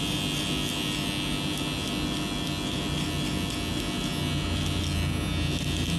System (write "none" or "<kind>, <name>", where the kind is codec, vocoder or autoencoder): none